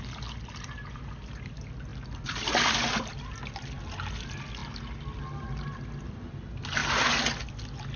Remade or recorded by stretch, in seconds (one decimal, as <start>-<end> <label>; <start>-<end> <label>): 0.0-8.0 recorded